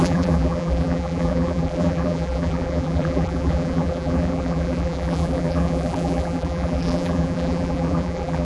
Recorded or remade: remade